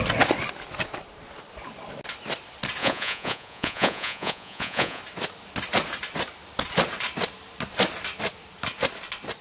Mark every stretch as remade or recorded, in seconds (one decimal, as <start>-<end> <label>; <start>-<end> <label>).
0.0-2.8 recorded; 2.8-5.0 remade; 5.0-9.4 recorded